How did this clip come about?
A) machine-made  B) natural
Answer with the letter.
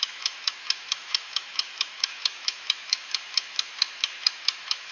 A